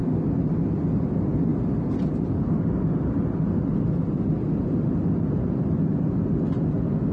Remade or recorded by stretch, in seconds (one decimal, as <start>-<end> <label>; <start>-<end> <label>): 0.0-7.1 recorded